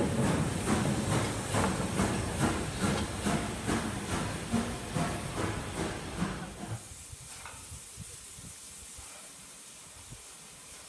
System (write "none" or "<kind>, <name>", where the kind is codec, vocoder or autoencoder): none